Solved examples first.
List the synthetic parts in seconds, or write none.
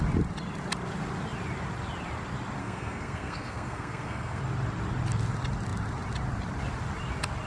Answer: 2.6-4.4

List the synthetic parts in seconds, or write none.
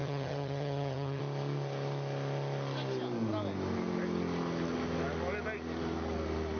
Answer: 0.0-1.2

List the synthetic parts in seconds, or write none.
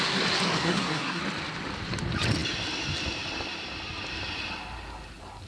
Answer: 0.6-1.2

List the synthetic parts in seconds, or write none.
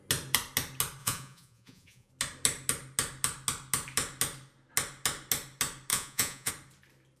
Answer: 1.0-2.1; 5.9-6.5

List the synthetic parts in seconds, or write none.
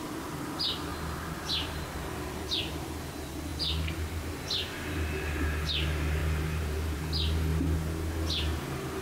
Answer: 6.2-7.0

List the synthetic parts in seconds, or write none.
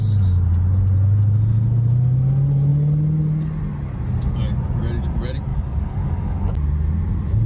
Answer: 5.5-6.5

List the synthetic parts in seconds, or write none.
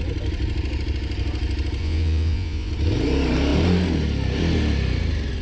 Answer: 1.8-2.7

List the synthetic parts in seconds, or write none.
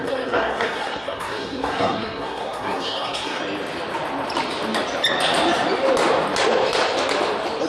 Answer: 0.0-3.4